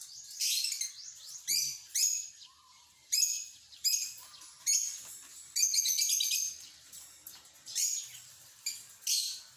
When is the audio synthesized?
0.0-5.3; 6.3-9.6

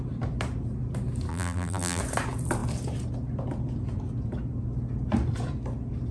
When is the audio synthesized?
1.3-2.0

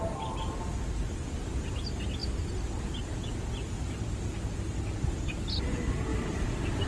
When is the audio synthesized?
6.1-6.9